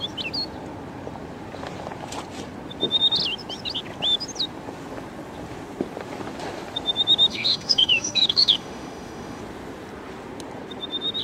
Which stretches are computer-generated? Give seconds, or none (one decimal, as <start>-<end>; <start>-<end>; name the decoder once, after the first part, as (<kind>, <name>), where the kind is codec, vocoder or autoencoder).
7.3-9.4 (autoencoder, DAC-VAE)